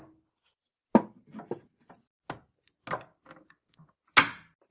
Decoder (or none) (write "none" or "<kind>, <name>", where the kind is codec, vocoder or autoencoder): none